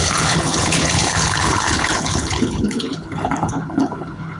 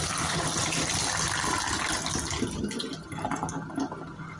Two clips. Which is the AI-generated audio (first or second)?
first